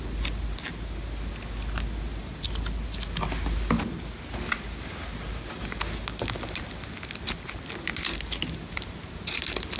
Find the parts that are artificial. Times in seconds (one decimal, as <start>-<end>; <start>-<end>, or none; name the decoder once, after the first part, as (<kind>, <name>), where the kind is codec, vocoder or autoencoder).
none